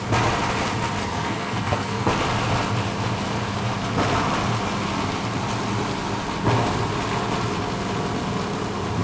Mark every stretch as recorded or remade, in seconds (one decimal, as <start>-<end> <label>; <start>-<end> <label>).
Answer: 0.0-1.0 recorded; 1.0-2.1 remade; 2.1-9.0 recorded

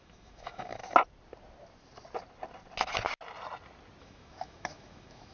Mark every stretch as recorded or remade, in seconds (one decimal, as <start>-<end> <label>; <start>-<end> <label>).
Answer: 0.0-0.8 remade; 0.8-4.0 recorded; 4.0-5.3 remade

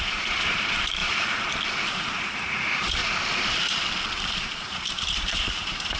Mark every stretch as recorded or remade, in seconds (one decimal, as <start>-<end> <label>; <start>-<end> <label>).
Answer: 0.0-1.0 remade; 1.0-1.9 recorded; 1.9-3.0 remade; 3.0-4.2 recorded; 4.2-6.0 remade

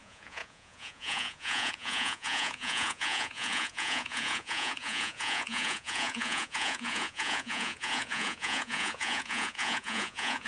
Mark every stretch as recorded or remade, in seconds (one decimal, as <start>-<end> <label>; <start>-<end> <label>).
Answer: 0.0-10.5 remade

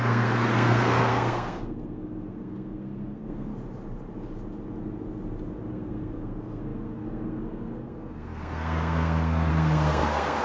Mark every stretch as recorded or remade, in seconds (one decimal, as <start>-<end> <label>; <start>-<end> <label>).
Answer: 0.0-3.5 remade; 3.5-5.7 recorded; 5.7-10.4 remade

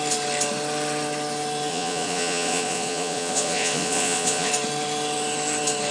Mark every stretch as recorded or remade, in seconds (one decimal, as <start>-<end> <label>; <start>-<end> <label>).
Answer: 0.0-1.7 recorded; 1.7-4.5 remade; 4.5-5.9 recorded

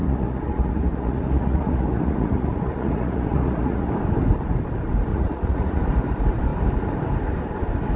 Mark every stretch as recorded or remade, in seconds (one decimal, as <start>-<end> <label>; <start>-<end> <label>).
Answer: 0.0-3.9 remade; 3.9-5.1 recorded; 5.1-5.8 remade; 5.8-8.0 recorded

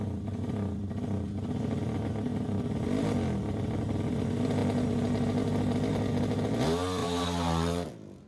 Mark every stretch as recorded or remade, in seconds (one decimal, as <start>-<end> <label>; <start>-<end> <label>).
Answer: 0.0-7.0 recorded; 7.0-7.9 remade; 7.9-8.3 recorded